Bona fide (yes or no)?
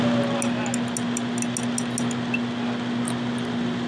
yes